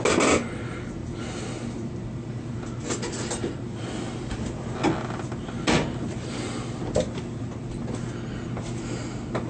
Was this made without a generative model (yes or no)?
yes